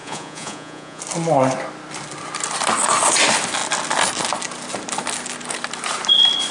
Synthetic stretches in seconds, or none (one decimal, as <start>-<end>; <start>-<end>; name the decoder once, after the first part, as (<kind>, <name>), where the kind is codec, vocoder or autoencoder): 0.0-1.0 (vocoder, Vocos)